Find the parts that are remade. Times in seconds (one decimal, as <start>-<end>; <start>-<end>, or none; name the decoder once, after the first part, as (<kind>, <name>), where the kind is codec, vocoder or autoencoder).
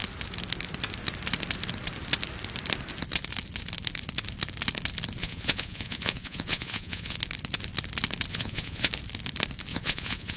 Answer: 5.2-7.2 (vocoder, Vocos); 8.3-8.9; 9.7-10.4